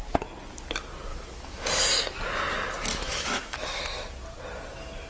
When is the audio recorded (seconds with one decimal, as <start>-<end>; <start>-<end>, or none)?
0.0-1.1; 1.8-2.9; 3.8-5.1